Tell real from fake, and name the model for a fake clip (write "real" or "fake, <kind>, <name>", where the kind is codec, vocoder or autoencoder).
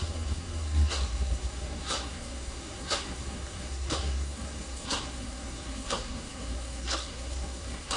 fake, codec, SNAC